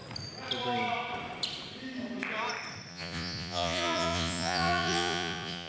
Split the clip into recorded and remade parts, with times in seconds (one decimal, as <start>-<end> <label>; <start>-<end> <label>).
0.0-2.9 recorded; 2.9-5.7 remade